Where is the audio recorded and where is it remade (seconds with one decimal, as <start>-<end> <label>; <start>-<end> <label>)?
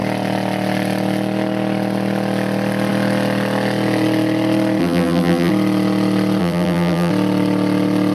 0.0-4.8 recorded; 4.8-5.5 remade; 5.5-6.4 recorded; 6.4-7.1 remade; 7.1-8.1 recorded